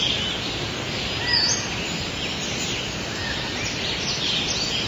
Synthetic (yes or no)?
no